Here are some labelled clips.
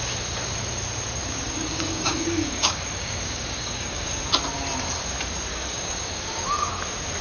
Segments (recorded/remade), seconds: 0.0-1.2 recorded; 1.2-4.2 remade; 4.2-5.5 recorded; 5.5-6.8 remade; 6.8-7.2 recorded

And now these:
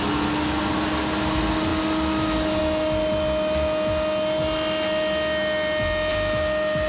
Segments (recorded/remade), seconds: 0.0-6.9 recorded

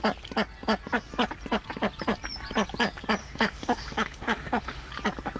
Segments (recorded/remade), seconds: 0.0-3.2 recorded; 3.2-4.9 remade; 4.9-5.4 recorded

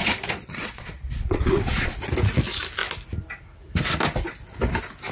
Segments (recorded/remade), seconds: 0.0-2.1 remade; 2.1-5.1 recorded